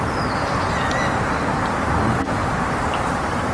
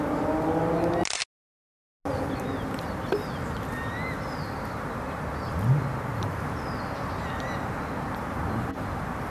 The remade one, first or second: first